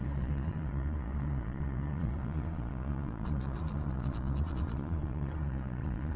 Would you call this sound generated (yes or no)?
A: yes